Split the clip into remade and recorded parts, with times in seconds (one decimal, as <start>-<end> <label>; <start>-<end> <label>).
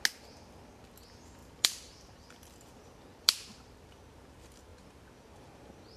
0.0-1.4 recorded; 1.4-3.9 remade; 3.9-6.0 recorded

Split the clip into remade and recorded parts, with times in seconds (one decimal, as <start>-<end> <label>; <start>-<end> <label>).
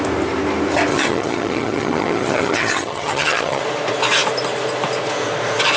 0.0-0.9 recorded; 0.9-3.6 remade; 3.6-5.8 recorded